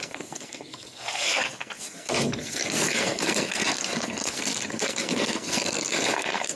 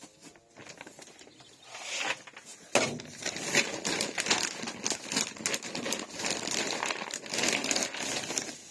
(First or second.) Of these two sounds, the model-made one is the first